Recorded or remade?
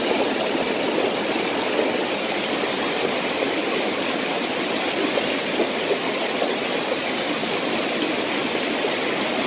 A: recorded